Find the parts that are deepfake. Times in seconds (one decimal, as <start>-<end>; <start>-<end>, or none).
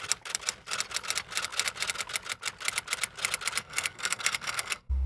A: 3.6-5.1